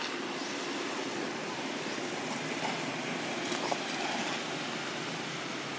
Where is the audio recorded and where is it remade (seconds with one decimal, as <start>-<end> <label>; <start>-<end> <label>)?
0.0-5.8 recorded